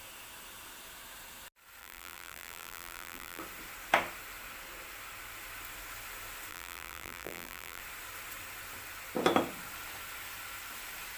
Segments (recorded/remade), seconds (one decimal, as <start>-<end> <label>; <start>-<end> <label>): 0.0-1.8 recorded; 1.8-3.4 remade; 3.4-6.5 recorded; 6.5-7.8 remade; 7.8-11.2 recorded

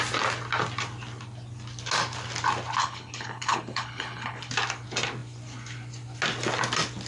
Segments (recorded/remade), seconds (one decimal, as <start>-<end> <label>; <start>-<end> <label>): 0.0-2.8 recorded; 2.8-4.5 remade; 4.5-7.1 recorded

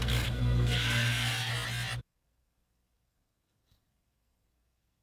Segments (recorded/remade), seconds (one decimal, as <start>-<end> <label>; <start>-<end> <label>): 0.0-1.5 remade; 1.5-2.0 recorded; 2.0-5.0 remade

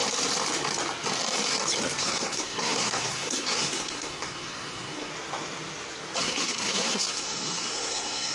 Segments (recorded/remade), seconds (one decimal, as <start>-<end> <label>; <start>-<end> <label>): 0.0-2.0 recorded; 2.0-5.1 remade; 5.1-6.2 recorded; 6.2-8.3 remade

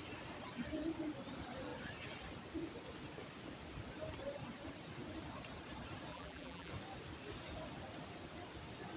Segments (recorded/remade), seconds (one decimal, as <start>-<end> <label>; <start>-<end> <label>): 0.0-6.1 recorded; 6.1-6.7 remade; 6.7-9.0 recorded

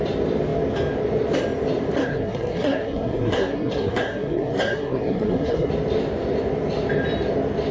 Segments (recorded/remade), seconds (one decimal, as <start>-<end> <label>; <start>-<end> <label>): 0.0-2.0 recorded; 2.0-5.7 remade; 5.7-7.7 recorded

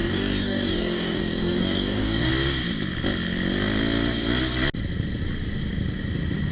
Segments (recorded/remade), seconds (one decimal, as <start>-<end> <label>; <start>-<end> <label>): 0.0-2.3 remade; 2.3-6.5 recorded